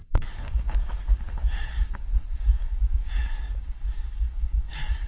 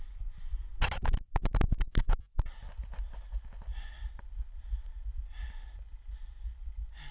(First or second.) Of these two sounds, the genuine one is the second